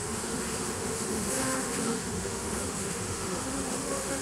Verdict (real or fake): fake